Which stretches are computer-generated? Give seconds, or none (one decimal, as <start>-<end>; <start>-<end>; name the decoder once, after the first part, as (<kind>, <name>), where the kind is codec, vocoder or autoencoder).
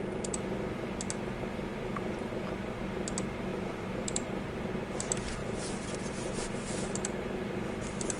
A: 1.7-2.3 (vocoder, BigVGAN v2); 3.5-4.7; 6.4-8.2